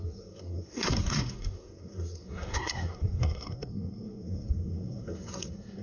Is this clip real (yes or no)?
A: no